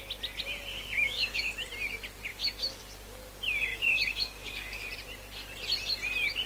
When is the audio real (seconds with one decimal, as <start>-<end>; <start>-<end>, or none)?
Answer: 0.0-0.7; 1.4-2.3; 2.8-3.7; 4.9-6.5